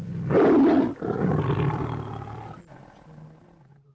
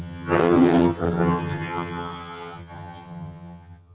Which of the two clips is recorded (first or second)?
first